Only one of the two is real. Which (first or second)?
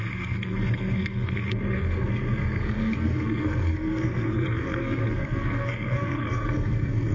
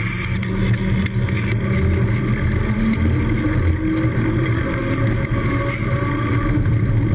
second